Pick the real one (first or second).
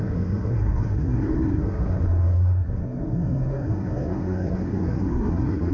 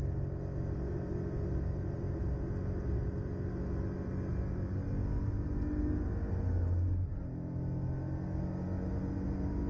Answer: second